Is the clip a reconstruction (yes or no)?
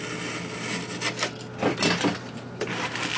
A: no